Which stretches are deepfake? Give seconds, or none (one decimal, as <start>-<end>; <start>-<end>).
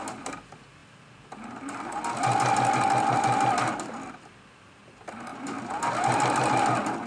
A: none